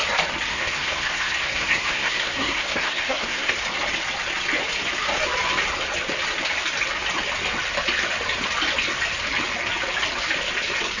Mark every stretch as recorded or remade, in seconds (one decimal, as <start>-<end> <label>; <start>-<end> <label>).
0.0-0.5 recorded; 0.5-3.5 remade; 3.5-11.0 recorded